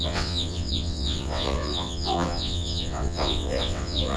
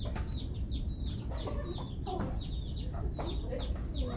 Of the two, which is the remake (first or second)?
first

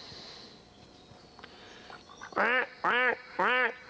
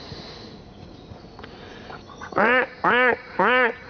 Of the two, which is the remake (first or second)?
second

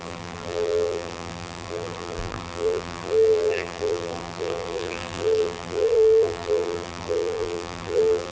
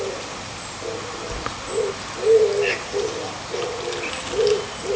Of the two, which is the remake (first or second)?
first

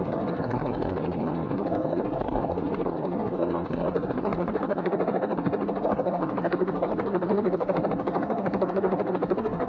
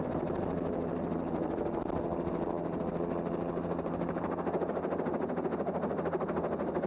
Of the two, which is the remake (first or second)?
first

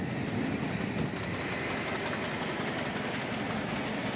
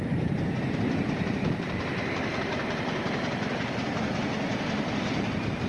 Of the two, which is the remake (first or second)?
second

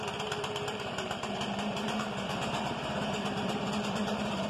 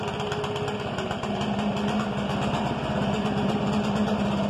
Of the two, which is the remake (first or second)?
first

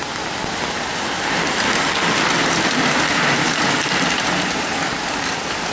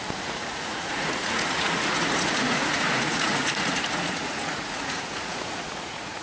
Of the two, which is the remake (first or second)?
second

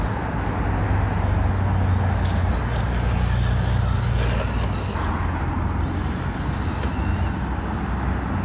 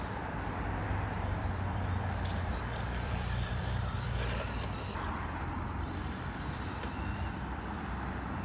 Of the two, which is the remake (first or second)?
second